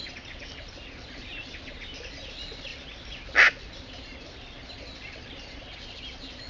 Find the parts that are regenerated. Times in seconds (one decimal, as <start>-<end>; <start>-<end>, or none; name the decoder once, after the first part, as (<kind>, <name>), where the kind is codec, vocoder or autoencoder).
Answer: 2.7-5.8 (vocoder, BigVGAN v2)